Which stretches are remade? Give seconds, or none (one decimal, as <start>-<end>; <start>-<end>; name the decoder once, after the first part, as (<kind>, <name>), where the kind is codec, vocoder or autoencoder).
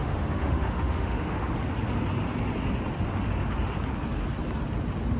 0.0-1.5 (autoencoder, DAC-VAE)